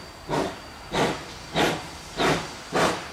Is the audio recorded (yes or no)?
yes